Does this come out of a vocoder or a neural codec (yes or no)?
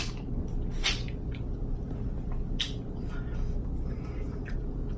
no